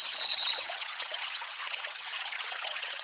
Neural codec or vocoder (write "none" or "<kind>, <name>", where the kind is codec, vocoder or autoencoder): vocoder, WaveNeXt